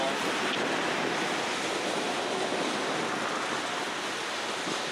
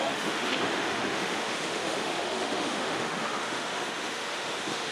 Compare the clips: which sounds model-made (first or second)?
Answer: second